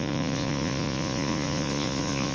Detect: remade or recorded remade